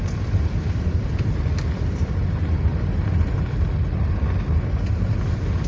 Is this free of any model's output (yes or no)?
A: yes